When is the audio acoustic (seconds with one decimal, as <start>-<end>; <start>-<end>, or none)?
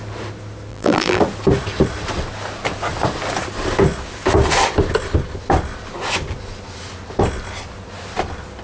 0.0-0.7; 1.2-8.6